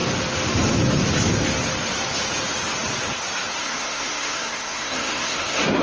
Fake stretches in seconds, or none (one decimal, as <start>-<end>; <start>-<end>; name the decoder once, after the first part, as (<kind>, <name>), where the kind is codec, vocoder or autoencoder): 3.6-5.8 (codec, SNAC)